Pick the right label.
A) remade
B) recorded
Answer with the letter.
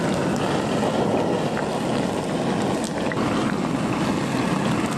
B